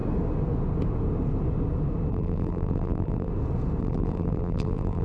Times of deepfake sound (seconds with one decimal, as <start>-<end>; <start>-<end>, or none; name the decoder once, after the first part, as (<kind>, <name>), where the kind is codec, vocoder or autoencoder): 2.1-3.3 (vocoder, BigVGAN v2); 3.8-5.0